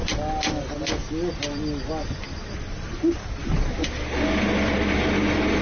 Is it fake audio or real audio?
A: real